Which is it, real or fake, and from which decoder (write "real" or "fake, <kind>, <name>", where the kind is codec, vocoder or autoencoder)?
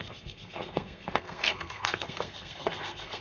fake, codec, SNAC